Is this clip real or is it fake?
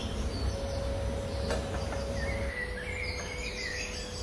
real